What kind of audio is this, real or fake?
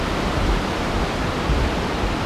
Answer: real